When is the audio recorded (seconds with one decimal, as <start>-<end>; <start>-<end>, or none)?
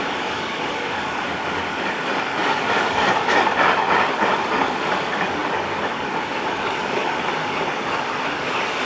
none